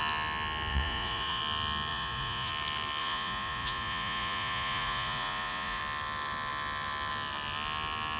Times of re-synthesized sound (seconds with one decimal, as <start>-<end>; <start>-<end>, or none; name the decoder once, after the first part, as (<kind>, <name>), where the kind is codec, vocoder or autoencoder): 0.7-1.4 (vocoder, Vocos); 1.9-2.5; 3.0-5.8